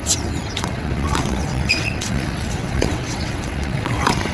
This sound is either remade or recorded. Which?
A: remade